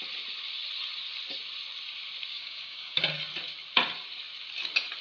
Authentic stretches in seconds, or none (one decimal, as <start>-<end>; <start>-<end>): 0.0-2.3; 3.0-5.0